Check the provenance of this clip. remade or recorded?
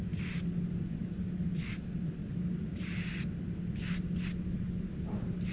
recorded